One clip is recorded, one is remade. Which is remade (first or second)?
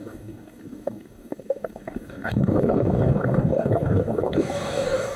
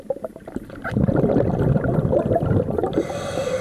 first